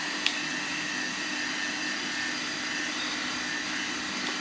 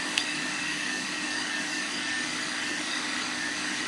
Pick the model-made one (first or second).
second